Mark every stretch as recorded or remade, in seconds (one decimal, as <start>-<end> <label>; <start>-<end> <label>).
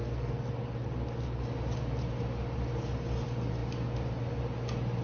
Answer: 0.0-0.5 remade; 0.5-5.0 recorded